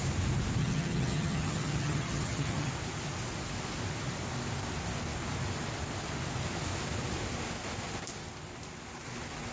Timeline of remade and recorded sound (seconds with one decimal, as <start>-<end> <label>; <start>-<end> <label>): 0.0-0.6 recorded; 0.6-2.7 remade; 2.7-9.5 recorded